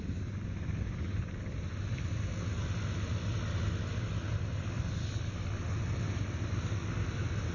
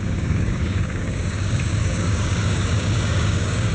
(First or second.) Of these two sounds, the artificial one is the second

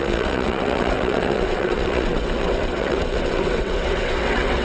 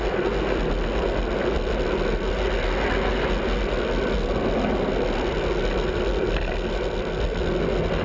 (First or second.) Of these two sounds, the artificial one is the first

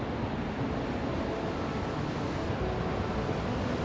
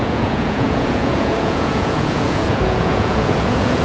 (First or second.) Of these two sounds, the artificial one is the second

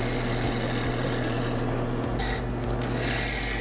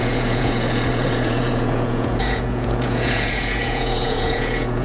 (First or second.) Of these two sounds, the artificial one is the second